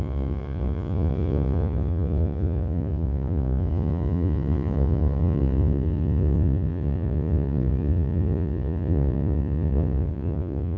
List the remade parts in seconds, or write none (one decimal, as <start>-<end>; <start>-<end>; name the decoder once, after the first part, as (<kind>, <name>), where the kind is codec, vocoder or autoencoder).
0.0-10.8 (vocoder, Vocos)